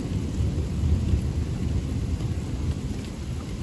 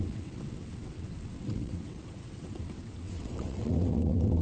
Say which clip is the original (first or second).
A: first